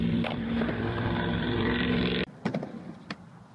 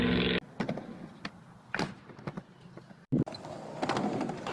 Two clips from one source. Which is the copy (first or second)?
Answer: first